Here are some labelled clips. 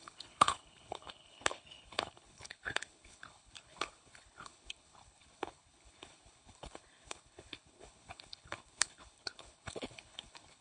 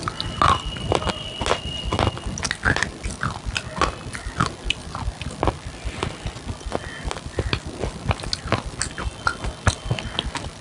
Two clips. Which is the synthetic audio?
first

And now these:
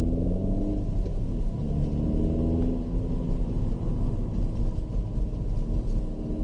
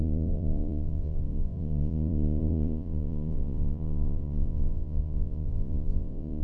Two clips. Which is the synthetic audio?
second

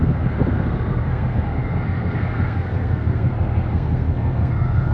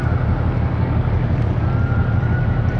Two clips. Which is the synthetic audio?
first